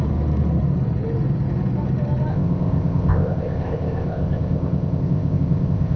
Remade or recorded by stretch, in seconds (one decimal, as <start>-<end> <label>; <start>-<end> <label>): 0.0-2.3 recorded; 2.3-6.0 remade